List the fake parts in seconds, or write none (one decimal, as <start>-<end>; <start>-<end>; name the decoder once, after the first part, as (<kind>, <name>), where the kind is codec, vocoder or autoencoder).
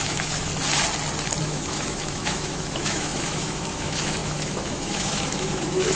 0.0-0.5 (autoencoder, DAC-VAE); 1.4-6.0